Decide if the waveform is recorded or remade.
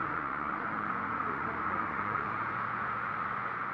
remade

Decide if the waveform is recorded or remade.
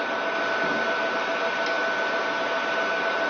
recorded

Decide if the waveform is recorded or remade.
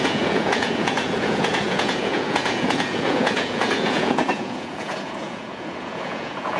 remade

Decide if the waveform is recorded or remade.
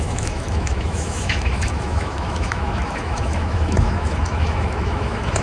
remade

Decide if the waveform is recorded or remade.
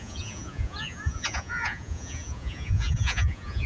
remade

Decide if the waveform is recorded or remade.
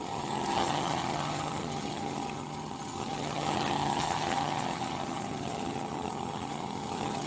remade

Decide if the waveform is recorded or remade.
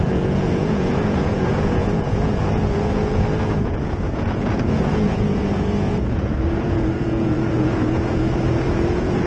remade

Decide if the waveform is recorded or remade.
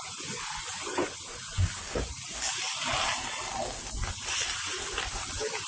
recorded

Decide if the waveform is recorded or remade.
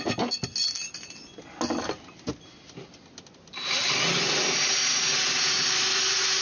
recorded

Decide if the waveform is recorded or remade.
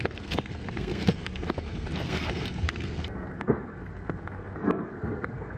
remade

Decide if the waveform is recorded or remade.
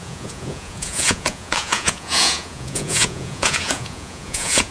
remade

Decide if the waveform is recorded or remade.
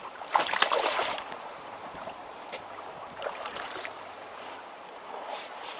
remade